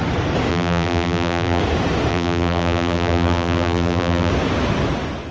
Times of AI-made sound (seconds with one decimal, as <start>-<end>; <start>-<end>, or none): 0.5-1.6; 2.1-4.3